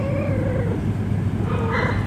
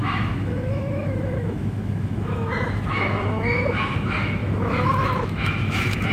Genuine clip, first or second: first